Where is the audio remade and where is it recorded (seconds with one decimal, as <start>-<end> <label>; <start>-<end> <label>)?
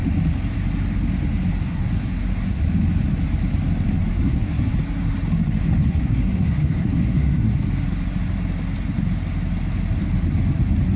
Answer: 0.0-1.7 recorded; 1.7-2.6 remade; 2.6-4.1 recorded; 4.1-4.7 remade; 4.7-5.9 recorded; 5.9-7.6 remade; 7.6-11.0 recorded